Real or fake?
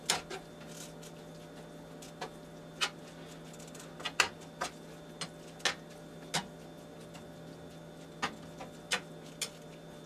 real